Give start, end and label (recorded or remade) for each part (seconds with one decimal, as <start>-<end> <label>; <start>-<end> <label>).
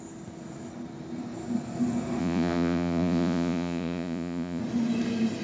0.0-2.2 recorded; 2.2-4.6 remade; 4.6-5.4 recorded